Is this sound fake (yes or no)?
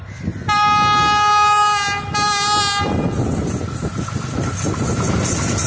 no